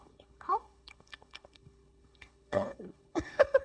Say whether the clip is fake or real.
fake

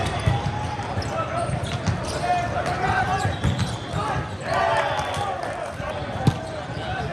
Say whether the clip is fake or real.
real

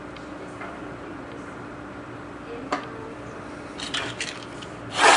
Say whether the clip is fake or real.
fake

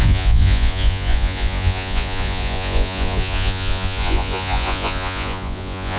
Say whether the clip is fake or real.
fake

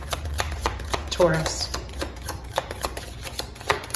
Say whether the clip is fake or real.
fake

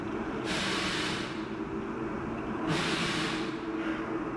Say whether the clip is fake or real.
real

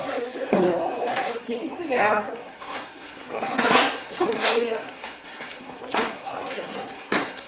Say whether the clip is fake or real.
fake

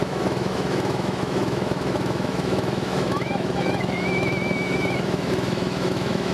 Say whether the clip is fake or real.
fake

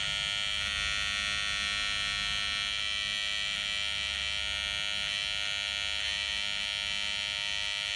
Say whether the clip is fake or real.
real